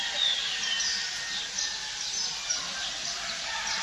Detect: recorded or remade recorded